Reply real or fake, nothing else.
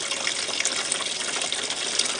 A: real